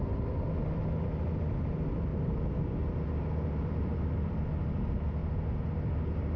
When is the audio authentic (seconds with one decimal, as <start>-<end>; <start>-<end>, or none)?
0.0-2.1; 4.5-5.2; 5.7-6.4